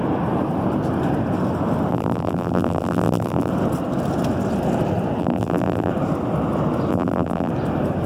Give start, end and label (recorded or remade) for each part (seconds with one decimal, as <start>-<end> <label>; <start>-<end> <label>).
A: 0.0-1.9 recorded; 1.9-3.5 remade; 3.5-5.2 recorded; 5.2-5.9 remade; 5.9-6.9 recorded; 6.9-7.5 remade; 7.5-8.1 recorded